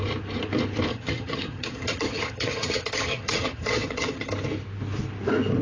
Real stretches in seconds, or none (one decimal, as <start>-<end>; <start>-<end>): 0.0-0.9; 4.3-5.6